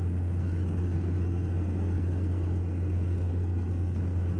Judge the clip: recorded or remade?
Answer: remade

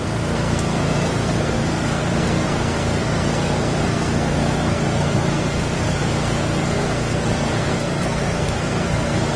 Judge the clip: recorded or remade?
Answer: remade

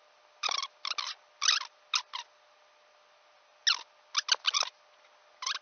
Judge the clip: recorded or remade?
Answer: recorded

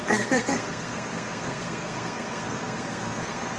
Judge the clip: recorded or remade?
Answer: remade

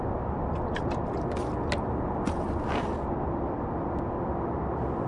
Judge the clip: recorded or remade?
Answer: recorded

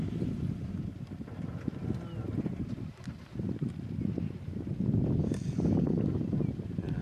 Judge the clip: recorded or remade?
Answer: recorded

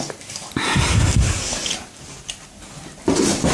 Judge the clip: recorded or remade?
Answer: recorded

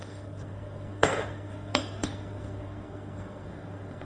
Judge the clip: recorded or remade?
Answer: remade